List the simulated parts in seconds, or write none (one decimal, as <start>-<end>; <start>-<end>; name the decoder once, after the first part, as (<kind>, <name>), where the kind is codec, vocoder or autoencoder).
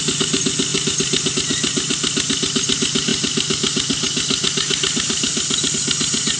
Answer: none